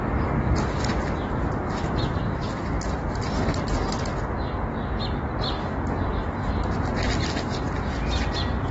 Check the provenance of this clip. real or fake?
real